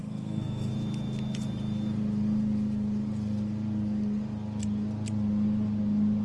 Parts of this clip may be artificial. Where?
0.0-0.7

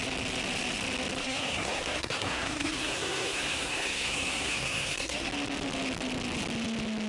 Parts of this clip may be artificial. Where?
1.2-5.3

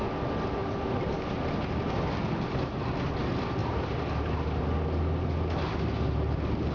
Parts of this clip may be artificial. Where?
0.6-1.5; 3.6-4.4

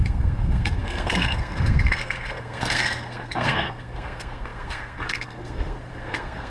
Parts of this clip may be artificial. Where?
0.0-6.5

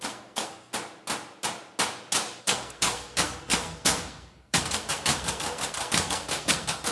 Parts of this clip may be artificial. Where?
0.0-0.7; 2.4-6.9